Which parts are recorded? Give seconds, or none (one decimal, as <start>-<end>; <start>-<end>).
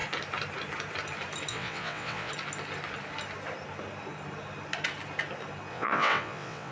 0.0-1.5; 2.3-5.7